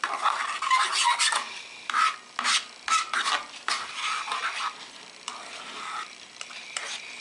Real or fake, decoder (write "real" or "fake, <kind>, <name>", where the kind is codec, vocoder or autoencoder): real